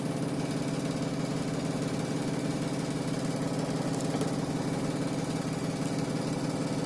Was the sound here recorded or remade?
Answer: recorded